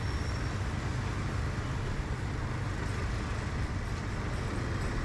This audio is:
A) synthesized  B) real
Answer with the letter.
B